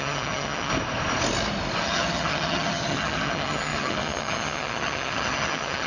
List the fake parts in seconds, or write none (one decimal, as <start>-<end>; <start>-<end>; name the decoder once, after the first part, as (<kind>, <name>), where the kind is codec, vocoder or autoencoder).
0.0-0.7 (vocoder, HiFi-GAN); 1.8-5.9